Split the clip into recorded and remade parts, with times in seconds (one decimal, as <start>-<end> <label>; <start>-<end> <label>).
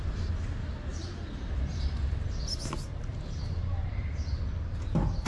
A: 0.0-0.9 recorded; 0.9-2.0 remade; 2.0-3.1 recorded; 3.1-4.0 remade; 4.0-5.3 recorded